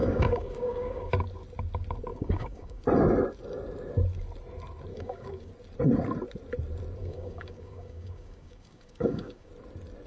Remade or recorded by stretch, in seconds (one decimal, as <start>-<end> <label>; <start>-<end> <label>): 0.0-1.1 remade; 1.1-2.1 recorded; 2.1-2.8 remade; 2.8-4.9 recorded; 4.9-5.5 remade; 5.5-7.0 recorded; 7.0-9.5 remade; 9.5-10.1 recorded